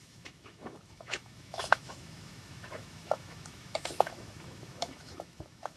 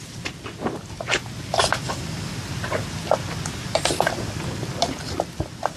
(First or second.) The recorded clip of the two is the second